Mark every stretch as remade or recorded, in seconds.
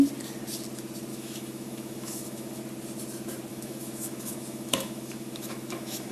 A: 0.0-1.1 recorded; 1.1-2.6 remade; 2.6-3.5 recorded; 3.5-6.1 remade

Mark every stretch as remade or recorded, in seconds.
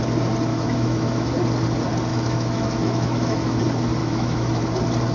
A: 0.0-0.5 recorded; 0.5-1.3 remade; 1.3-2.1 recorded; 2.1-3.6 remade; 3.6-4.0 recorded; 4.0-4.6 remade; 4.6-5.1 recorded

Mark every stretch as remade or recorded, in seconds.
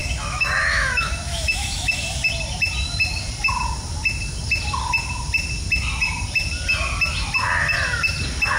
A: 0.0-2.0 remade; 2.0-8.6 recorded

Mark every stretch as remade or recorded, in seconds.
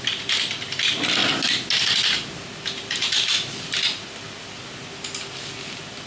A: 0.0-6.1 recorded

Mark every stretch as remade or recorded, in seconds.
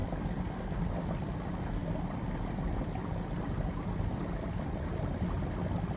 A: 0.0-6.0 recorded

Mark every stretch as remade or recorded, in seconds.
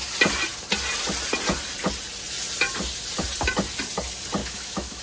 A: 0.0-4.4 recorded; 4.4-5.0 remade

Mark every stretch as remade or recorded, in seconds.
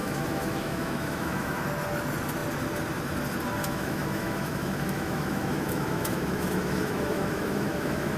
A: 0.0-1.6 remade; 1.6-3.6 recorded; 3.6-8.2 remade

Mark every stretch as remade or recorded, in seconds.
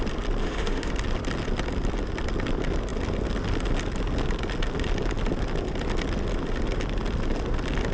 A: 0.0-0.4 recorded; 0.4-0.9 remade; 0.9-7.9 recorded